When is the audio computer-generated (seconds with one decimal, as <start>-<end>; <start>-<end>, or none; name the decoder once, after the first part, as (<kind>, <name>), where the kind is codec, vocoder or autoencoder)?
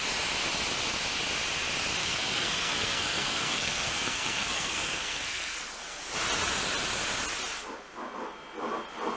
2.0-6.0 (codec, SNAC)